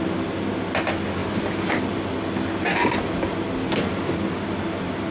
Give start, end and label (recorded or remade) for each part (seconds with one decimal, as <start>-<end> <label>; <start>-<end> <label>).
0.0-5.1 recorded